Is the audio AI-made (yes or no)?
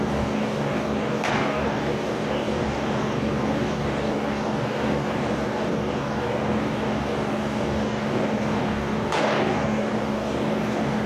yes